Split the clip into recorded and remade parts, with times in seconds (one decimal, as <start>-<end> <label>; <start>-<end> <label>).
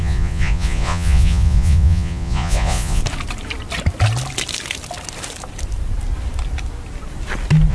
0.0-3.0 remade; 3.0-7.7 recorded